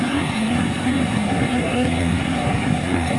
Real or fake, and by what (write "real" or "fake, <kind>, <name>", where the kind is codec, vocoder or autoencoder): fake, codec, SNAC